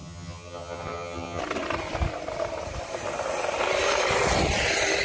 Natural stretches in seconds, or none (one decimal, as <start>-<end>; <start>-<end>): 1.4-5.0